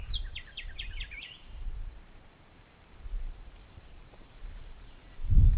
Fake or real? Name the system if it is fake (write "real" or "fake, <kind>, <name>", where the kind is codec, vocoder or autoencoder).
fake, vocoder, BigVGAN v2